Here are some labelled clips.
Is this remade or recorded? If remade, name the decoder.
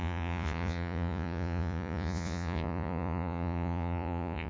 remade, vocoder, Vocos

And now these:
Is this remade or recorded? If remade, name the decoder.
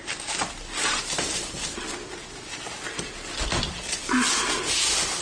recorded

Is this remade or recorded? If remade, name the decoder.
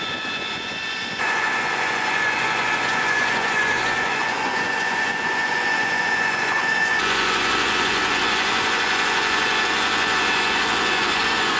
remade, vocoder, Vocos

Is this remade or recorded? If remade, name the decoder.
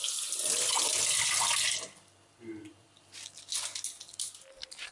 recorded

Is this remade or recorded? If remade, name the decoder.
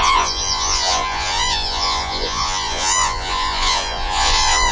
remade, vocoder, Vocos